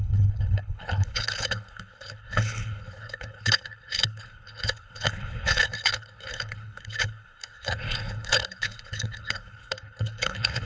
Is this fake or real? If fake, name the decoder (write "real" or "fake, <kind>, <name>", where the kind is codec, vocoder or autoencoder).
fake, codec, HILCodec